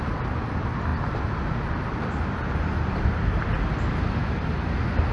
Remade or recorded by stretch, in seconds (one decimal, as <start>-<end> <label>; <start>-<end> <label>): 0.0-5.1 recorded